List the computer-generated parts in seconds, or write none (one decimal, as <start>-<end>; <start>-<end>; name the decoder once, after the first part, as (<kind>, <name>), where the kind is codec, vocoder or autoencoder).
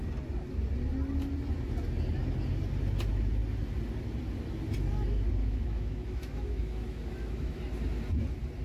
5.4-7.6 (autoencoder, DAC-VAE)